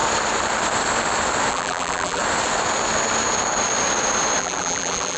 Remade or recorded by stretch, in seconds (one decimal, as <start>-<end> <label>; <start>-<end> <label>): 0.0-1.5 recorded; 1.5-2.2 remade; 2.2-4.4 recorded; 4.4-5.2 remade